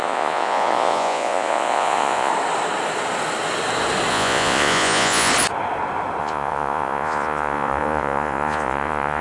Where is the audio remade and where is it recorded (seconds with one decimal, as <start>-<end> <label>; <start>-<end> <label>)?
0.0-2.3 remade; 2.3-4.1 recorded; 4.1-5.3 remade; 5.3-6.2 recorded; 6.2-9.2 remade